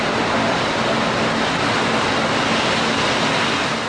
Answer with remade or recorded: recorded